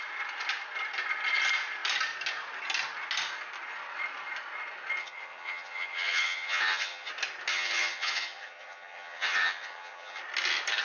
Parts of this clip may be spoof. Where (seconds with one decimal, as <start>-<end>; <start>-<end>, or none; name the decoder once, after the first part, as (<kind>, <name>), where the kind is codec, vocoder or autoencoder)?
5.0-7.1 (vocoder, HiFi-GAN); 7.5-10.2